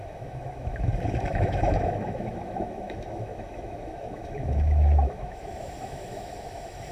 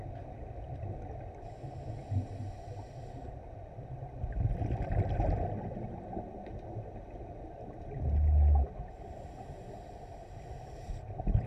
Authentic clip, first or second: second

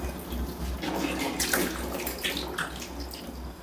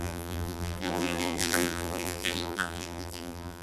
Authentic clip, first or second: first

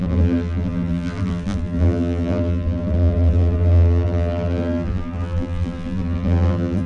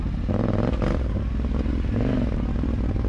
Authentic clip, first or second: second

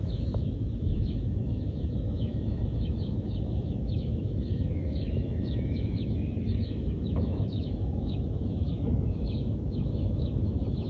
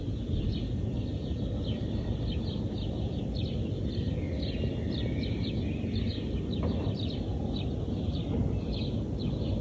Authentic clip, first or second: second